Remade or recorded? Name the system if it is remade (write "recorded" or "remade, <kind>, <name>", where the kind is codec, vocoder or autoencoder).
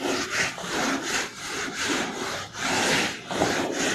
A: remade, vocoder, BigVGAN v2